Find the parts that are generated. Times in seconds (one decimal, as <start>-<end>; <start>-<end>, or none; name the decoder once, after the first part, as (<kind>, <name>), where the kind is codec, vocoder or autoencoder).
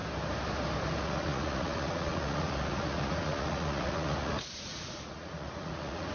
1.0-6.1 (vocoder, Vocos)